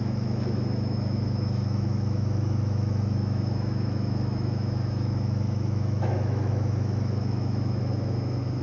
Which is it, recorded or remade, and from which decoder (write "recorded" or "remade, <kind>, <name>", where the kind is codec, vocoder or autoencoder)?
remade, autoencoder, DAC-VAE